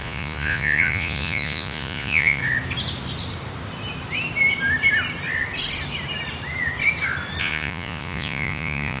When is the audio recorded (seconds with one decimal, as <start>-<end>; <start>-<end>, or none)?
2.4-7.4

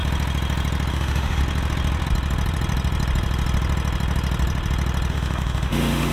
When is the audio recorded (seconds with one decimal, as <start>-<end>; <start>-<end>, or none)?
0.0-0.9; 1.4-5.1

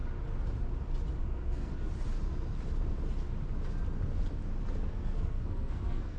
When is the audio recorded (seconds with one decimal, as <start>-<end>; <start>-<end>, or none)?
0.0-1.2; 1.7-4.9

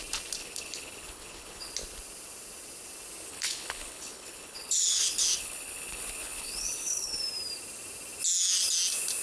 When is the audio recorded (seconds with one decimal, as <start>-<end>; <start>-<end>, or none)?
0.0-0.4; 1.7-3.3; 7.2-9.2